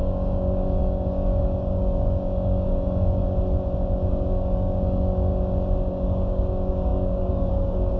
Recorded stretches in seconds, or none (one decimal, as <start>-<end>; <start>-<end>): 3.2-4.1; 5.3-5.9